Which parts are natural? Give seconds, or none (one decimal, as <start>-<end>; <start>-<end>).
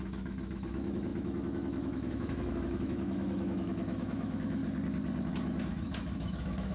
4.6-5.3